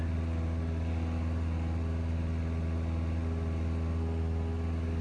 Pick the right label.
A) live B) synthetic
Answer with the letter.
A